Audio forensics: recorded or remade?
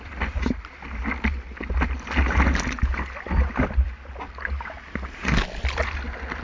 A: recorded